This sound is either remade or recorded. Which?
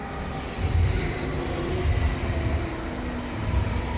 recorded